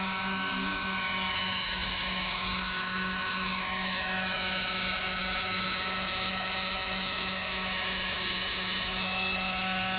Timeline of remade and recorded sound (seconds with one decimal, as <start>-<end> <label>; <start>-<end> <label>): 0.0-10.0 remade